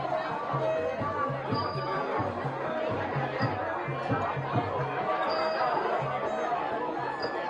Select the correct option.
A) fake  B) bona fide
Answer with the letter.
B